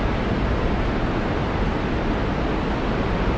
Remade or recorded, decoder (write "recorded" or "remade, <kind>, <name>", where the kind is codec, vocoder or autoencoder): recorded